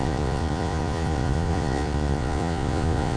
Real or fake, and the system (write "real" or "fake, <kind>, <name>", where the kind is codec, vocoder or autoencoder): fake, vocoder, Vocos